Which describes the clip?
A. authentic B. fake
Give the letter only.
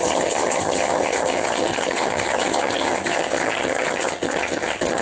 B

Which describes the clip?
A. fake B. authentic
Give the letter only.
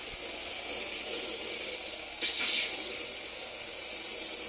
B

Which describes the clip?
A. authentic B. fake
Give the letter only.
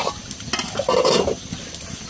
A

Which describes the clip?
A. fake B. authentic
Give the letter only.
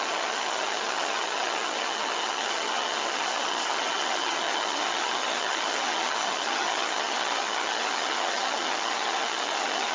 A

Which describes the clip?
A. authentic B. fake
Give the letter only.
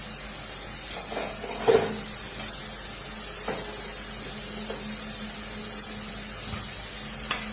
A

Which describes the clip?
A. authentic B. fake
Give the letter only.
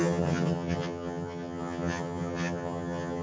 B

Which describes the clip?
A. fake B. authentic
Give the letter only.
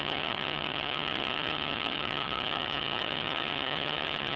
A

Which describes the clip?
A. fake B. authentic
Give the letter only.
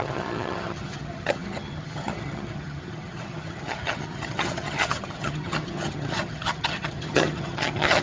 A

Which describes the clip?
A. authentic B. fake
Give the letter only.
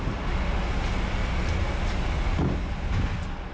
A